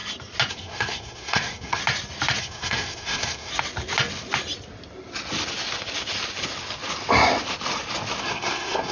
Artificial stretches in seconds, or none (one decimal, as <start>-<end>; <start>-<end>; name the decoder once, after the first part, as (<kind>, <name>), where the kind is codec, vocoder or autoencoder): 0.5-1.8 (codec, SNAC); 2.4-3.5; 8.2-8.9